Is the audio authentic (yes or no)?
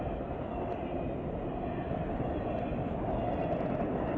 yes